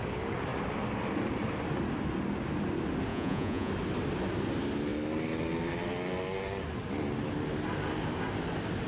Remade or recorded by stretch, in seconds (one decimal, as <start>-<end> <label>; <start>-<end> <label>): 0.0-3.1 recorded; 3.1-3.7 remade; 3.7-8.9 recorded